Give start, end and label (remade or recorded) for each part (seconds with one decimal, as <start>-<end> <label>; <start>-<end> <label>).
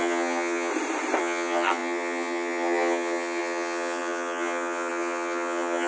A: 0.0-0.7 remade; 0.7-1.2 recorded; 1.2-5.9 remade